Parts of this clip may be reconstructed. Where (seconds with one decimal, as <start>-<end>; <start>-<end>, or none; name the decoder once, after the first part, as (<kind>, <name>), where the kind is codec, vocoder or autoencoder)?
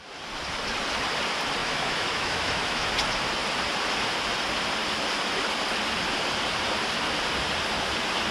1.6-2.9 (autoencoder, DAC-VAE)